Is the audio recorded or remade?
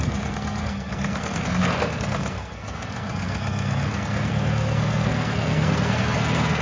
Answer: remade